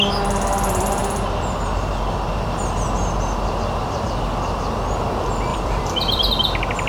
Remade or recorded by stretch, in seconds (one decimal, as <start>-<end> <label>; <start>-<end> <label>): 0.0-5.5 recorded; 5.5-6.3 remade; 6.3-6.9 recorded